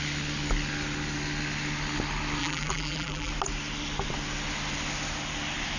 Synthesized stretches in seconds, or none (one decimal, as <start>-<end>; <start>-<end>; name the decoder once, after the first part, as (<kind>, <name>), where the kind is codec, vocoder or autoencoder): 2.4-3.3 (vocoder, BigVGAN v2)